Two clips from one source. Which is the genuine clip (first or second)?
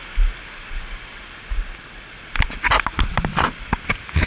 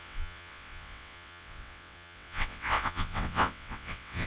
first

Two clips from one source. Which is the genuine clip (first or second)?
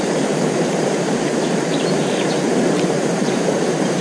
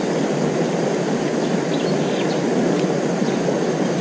second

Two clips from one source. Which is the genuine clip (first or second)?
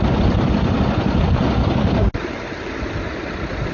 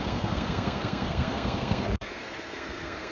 first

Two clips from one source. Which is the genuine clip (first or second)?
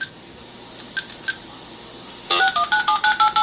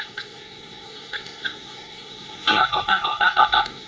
first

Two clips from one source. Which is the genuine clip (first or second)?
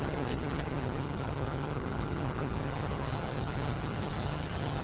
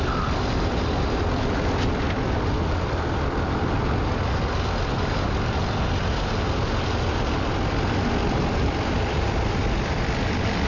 second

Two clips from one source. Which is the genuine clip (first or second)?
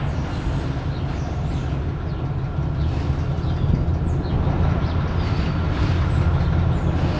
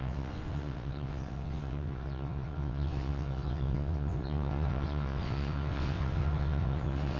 first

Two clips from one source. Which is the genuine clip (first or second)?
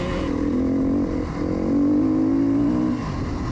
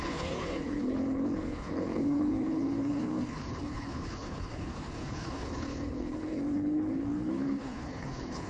first